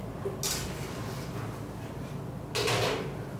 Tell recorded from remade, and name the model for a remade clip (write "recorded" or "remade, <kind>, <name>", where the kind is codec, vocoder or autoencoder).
recorded